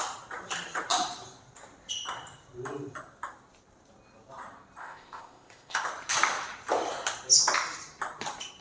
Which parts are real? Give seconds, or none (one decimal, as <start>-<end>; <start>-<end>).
0.0-4.8; 5.9-8.6